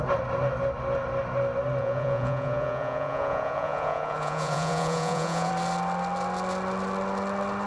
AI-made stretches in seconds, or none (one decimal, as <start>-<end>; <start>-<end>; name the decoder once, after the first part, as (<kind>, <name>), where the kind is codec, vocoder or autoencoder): 1.8-5.5 (vocoder, Vocos)